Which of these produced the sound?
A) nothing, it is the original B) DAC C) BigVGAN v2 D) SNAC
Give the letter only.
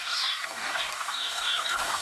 B